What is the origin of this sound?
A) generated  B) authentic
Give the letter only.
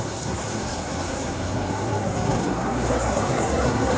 A